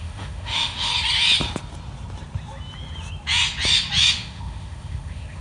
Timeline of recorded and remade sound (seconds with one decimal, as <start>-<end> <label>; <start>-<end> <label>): 0.0-0.9 remade; 0.9-4.1 recorded; 4.1-5.4 remade